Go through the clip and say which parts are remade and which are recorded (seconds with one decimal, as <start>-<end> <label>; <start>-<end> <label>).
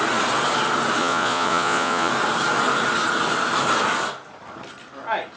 0.0-1.0 recorded; 1.0-2.1 remade; 2.1-5.4 recorded